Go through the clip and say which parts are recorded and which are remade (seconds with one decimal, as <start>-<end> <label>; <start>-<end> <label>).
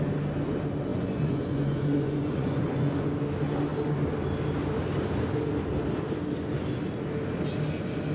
0.0-0.9 recorded; 0.9-3.1 remade; 3.1-8.1 recorded